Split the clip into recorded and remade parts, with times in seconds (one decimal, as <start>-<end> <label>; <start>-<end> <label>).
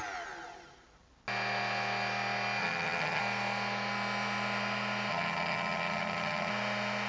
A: 0.0-2.6 recorded; 2.6-3.2 remade; 3.2-5.1 recorded; 5.1-6.5 remade; 6.5-7.1 recorded